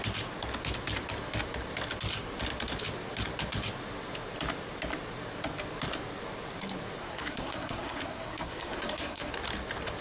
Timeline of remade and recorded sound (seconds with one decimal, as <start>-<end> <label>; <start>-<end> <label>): 0.0-7.0 recorded; 7.0-9.3 remade; 9.3-10.0 recorded